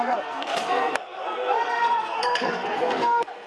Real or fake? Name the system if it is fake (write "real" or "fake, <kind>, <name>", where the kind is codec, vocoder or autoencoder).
fake, codec, SNAC